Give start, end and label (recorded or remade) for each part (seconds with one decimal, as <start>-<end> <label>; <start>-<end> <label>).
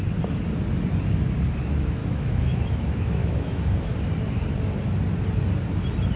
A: 0.0-2.0 recorded; 2.0-3.9 remade; 3.9-6.2 recorded